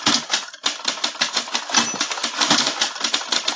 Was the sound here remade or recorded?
recorded